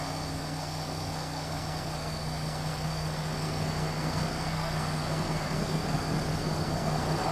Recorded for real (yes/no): no